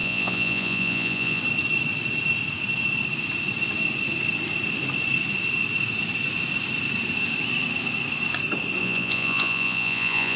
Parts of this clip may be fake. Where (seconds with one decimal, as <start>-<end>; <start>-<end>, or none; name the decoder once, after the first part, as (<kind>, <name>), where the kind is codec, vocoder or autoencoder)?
0.0-1.4 (vocoder, Vocos); 8.8-10.4